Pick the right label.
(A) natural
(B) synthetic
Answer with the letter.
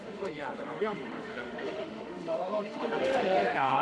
B